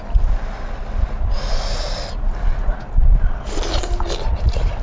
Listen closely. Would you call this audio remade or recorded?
recorded